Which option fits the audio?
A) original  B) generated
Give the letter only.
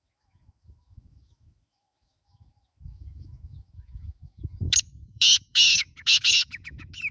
B